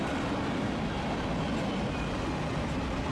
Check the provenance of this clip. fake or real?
real